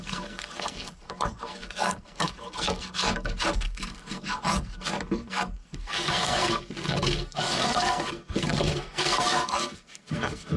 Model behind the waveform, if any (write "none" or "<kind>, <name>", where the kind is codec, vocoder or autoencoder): codec, SNAC